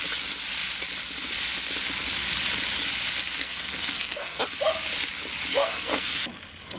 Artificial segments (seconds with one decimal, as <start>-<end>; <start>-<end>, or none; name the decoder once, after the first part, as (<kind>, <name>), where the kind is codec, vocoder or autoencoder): 3.4-4.4 (codec, SNAC); 5.5-6.2